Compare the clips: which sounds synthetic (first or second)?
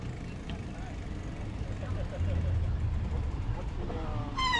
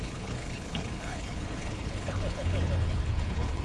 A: second